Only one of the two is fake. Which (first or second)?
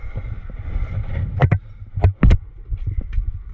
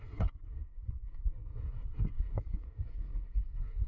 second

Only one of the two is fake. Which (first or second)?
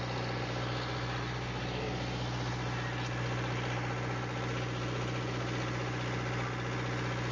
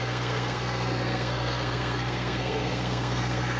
second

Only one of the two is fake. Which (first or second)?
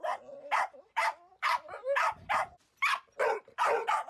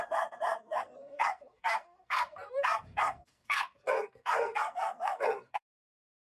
second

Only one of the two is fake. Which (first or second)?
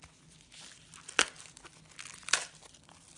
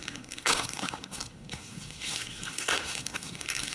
second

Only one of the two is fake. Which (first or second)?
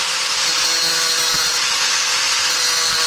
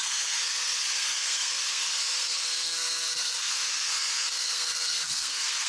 second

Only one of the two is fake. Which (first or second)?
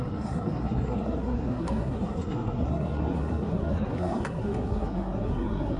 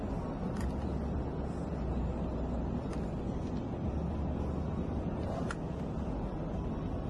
first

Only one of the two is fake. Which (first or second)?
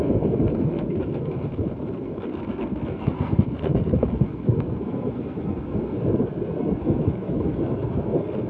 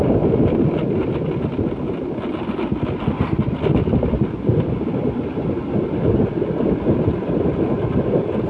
first